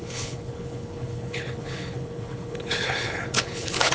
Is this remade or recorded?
remade